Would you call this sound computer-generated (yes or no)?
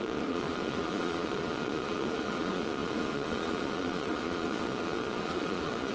yes